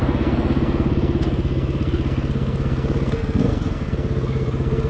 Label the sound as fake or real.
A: fake